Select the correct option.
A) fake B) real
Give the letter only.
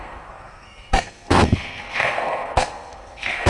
A